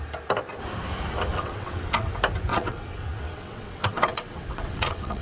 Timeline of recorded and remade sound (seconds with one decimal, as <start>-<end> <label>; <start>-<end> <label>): 0.0-1.3 recorded; 1.3-2.1 remade; 2.1-2.5 recorded; 2.5-5.2 remade